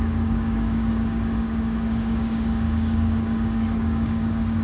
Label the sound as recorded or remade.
remade